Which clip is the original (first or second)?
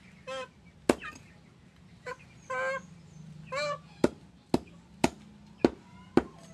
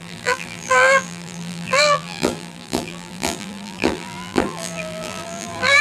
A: first